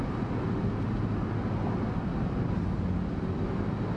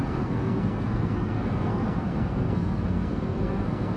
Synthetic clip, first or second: second